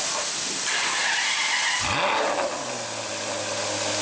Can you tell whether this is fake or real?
real